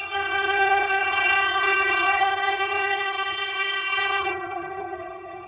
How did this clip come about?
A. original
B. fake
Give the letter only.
B